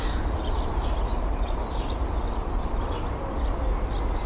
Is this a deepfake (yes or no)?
no